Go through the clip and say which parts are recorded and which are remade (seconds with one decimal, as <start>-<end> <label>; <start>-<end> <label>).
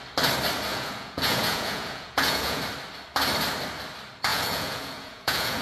0.0-0.7 recorded; 0.7-2.6 remade; 2.6-4.3 recorded; 4.3-5.6 remade